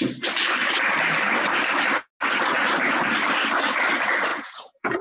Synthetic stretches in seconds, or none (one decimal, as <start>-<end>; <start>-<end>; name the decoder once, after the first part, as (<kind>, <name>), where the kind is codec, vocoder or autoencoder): 4.3-5.0 (vocoder, Vocos)